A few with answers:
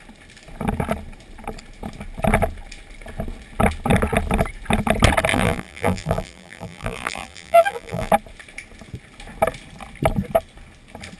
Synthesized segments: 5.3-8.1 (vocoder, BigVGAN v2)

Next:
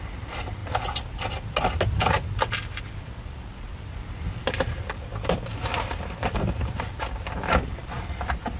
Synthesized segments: 0.0-0.6 (vocoder, BigVGAN v2); 3.0-8.6

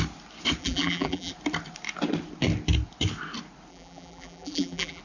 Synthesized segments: 0.6-1.3 (vocoder, BigVGAN v2); 3.7-5.0

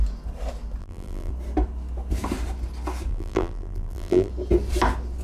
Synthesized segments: 0.8-1.3 (vocoder, BigVGAN v2); 3.1-4.3

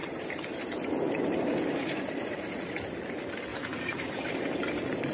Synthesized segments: 0.0-3.1 (vocoder, BigVGAN v2); 3.5-4.3

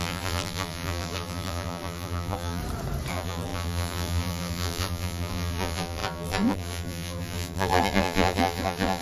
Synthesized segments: 0.0-2.6 (vocoder, BigVGAN v2); 3.1-9.0